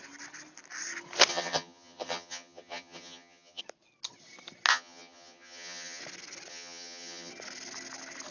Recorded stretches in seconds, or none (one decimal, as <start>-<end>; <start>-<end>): 0.0-1.3; 3.6-4.7; 6.0-6.5; 7.3-8.3